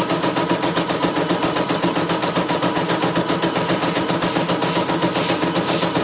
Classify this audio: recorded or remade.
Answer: recorded